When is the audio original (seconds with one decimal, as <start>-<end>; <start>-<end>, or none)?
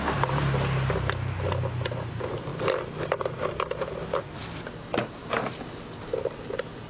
0.0-6.9